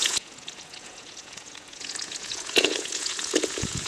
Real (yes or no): no